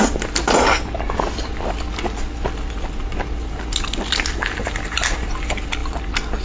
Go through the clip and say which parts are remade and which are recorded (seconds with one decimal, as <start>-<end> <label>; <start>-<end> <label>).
0.0-6.4 recorded